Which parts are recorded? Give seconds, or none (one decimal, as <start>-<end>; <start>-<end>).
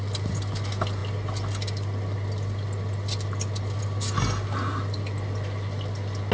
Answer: 0.0-6.3